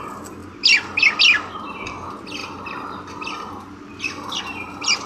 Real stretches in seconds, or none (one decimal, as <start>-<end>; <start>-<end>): 0.0-5.1